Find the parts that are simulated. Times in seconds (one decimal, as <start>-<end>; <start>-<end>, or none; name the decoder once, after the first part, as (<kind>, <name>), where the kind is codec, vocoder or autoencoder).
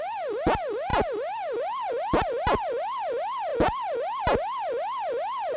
none